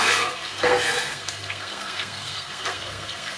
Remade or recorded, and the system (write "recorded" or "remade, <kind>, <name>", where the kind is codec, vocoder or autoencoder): remade, codec, SNAC